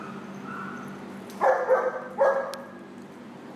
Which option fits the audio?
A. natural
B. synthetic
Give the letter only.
A